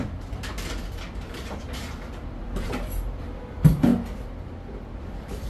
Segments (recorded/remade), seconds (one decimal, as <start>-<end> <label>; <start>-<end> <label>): 0.0-3.9 remade; 3.9-5.0 recorded; 5.0-5.5 remade